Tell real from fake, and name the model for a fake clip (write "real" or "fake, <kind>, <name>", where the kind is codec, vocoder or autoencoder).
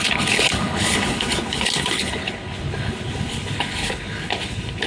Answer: fake, codec, HILCodec